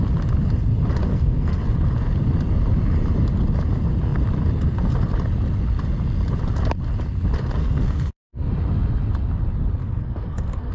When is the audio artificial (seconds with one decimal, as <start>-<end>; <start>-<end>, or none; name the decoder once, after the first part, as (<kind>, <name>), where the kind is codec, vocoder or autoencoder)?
1.1-1.6 (codec, SNAC); 7.6-8.5; 9.8-10.7